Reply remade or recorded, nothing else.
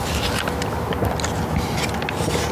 recorded